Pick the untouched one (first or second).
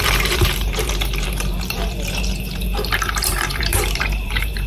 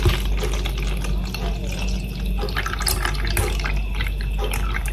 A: second